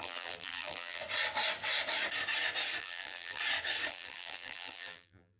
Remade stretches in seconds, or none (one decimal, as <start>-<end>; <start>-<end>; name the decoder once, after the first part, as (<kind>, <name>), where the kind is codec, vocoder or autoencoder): 0.0-1.0 (vocoder, BigVGAN v2); 2.8-3.4; 3.9-5.4